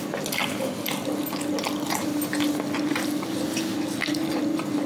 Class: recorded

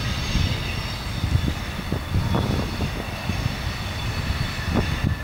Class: recorded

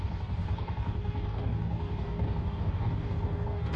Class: remade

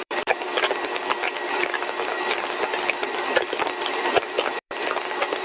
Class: remade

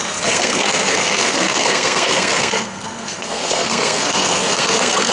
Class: remade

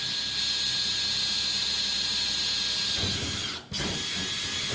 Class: recorded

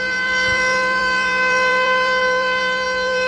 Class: remade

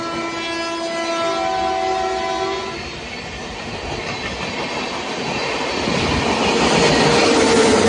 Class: recorded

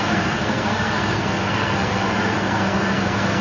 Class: remade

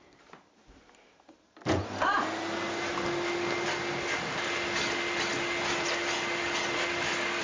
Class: recorded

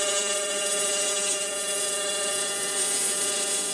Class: remade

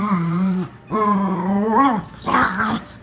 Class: remade